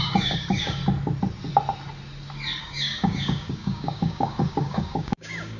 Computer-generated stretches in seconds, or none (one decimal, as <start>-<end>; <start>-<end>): 0.0-0.8; 2.6-5.6